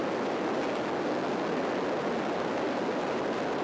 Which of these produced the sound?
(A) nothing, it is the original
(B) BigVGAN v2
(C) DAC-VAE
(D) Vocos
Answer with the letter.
A